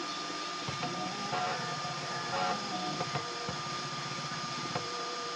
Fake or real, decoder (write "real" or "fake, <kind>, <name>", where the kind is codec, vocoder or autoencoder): fake, vocoder, BigVGAN v2